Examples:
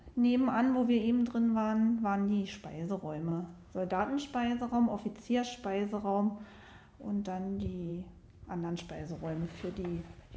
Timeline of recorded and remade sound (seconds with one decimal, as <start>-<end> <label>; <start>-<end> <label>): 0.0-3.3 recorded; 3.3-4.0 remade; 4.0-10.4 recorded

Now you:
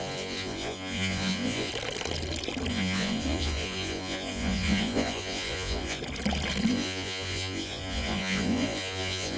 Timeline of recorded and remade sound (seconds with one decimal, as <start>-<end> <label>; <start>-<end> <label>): 0.0-1.7 remade; 1.7-2.7 recorded; 2.7-6.0 remade; 6.0-6.7 recorded; 6.7-9.4 remade

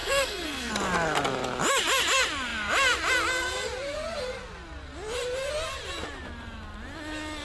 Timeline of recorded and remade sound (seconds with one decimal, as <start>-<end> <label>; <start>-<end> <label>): 0.0-0.7 remade; 0.7-7.4 recorded